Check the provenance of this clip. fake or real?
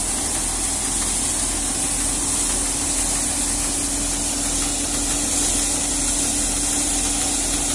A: real